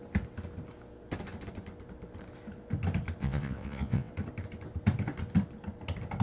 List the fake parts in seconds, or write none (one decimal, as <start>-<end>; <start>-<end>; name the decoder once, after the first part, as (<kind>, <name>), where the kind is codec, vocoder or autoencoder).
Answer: 3.2-4.1 (vocoder, WaveNeXt)